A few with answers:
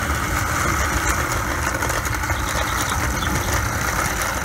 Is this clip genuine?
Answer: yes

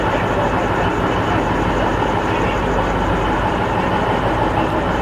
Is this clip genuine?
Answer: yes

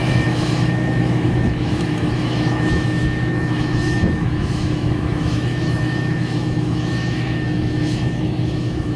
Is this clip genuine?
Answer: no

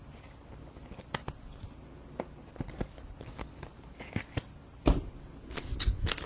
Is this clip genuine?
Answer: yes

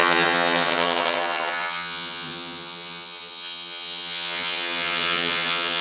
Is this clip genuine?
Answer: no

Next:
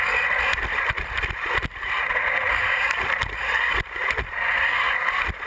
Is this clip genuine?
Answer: yes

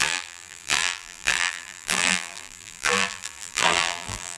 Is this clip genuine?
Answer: no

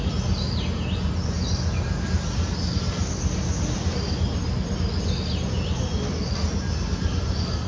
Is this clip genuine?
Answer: yes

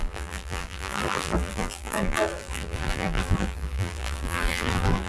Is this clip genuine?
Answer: no